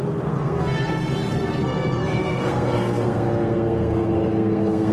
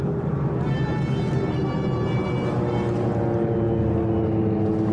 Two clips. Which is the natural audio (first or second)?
second